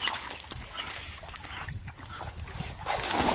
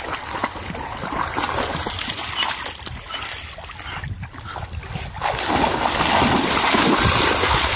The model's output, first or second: first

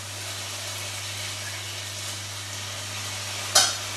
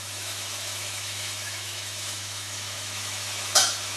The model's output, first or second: second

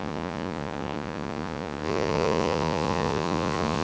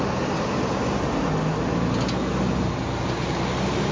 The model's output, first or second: first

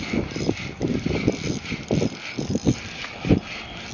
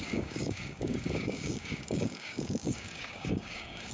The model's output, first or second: second